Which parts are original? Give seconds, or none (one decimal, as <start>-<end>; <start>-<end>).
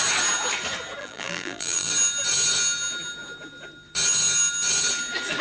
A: 0.0-1.0; 1.9-5.4